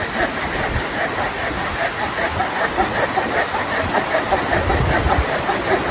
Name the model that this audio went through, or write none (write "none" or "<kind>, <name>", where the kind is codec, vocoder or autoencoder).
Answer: none